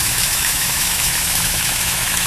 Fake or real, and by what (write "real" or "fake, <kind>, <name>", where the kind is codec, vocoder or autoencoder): fake, autoencoder, DAC-VAE